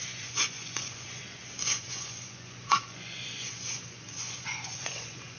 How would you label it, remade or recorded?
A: remade